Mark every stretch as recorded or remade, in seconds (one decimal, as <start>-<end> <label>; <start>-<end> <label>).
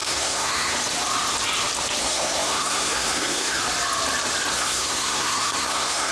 0.0-0.7 remade; 0.7-2.0 recorded; 2.0-3.6 remade; 3.6-4.5 recorded; 4.5-6.1 remade